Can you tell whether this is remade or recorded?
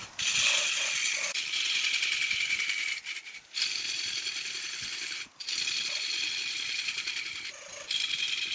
recorded